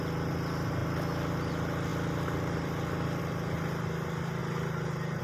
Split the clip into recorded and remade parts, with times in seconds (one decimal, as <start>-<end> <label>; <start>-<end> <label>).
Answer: 0.0-5.2 recorded